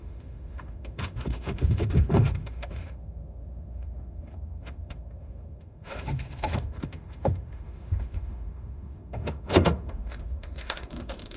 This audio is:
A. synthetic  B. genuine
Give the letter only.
A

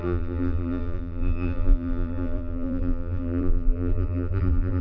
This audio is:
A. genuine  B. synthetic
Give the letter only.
B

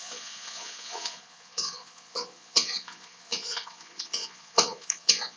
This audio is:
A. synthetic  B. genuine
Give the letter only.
A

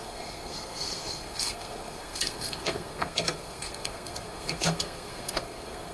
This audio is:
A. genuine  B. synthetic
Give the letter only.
B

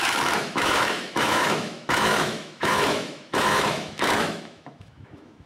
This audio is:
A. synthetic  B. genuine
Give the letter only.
A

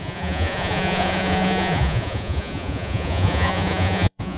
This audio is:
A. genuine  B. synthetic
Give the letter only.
B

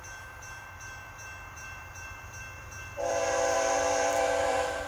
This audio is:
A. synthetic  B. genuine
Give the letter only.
A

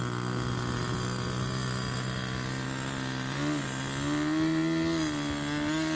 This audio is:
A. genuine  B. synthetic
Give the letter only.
A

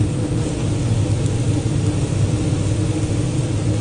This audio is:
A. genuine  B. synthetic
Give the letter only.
A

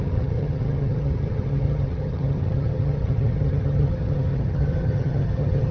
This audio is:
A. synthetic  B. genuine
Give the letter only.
A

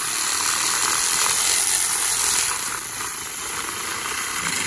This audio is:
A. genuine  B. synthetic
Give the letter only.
A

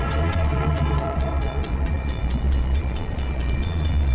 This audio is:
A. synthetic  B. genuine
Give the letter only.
A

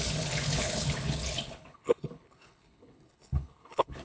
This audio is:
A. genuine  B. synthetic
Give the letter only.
B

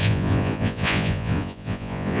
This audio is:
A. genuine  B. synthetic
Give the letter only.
B